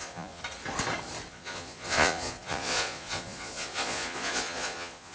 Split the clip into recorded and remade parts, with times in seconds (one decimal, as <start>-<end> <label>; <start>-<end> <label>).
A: 0.0-0.4 remade; 0.4-1.3 recorded; 1.3-5.1 remade

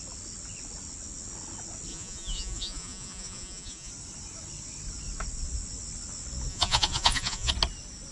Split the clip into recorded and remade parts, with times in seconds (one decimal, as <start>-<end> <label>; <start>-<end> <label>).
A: 0.0-1.9 recorded; 1.9-3.9 remade; 3.9-6.5 recorded; 6.5-7.5 remade; 7.5-8.1 recorded

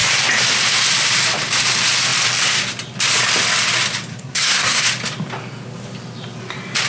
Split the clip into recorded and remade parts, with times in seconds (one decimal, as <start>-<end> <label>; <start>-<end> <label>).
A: 0.0-4.1 recorded; 4.1-4.8 remade; 4.8-6.9 recorded

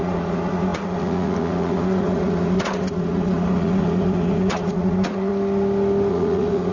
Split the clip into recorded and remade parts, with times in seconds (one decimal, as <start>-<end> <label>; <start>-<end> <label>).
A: 0.0-5.3 remade; 5.3-6.1 recorded; 6.1-6.7 remade

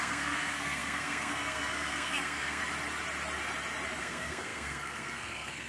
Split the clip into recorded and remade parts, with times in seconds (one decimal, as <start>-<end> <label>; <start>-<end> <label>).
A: 0.0-2.6 remade; 2.6-4.0 recorded; 4.0-5.7 remade

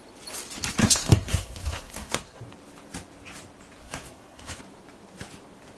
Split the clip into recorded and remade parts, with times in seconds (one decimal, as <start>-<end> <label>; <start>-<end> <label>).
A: 0.0-0.8 recorded; 0.8-2.4 remade; 2.4-3.8 recorded; 3.8-4.6 remade; 4.6-5.8 recorded

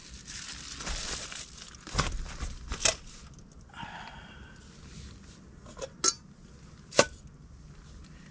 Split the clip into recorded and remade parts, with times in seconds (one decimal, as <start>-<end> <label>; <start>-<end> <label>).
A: 0.0-8.3 recorded

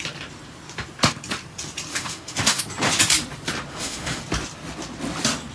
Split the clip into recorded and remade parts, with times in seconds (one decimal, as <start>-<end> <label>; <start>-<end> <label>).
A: 0.0-1.9 recorded; 1.9-2.6 remade; 2.6-3.7 recorded; 3.7-4.2 remade; 4.2-5.5 recorded